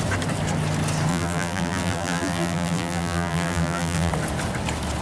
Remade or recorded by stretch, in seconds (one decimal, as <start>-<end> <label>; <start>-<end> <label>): 0.0-1.1 recorded; 1.1-4.1 remade; 4.1-5.0 recorded